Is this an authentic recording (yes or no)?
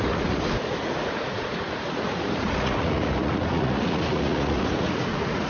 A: no